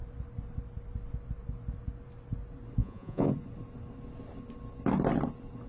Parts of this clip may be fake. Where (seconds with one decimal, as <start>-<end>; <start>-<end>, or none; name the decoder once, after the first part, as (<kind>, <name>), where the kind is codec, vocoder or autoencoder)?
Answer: 2.8-3.3 (vocoder, Vocos)